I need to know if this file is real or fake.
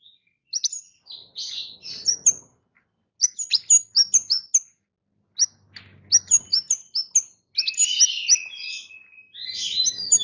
real